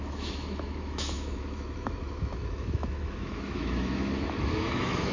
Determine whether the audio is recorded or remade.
remade